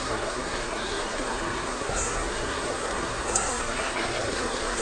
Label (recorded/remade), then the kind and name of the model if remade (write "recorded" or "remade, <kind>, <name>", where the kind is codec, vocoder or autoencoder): remade, codec, SNAC